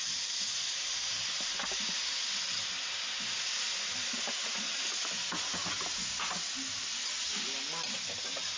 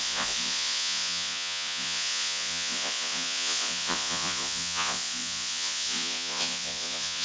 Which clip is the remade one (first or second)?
second